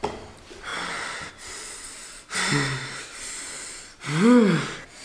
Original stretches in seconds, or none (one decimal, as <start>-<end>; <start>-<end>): 0.0-0.7; 1.3-5.0